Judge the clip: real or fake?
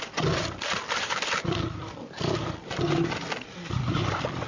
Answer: fake